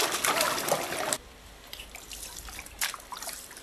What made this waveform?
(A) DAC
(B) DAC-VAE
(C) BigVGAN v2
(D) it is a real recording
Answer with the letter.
C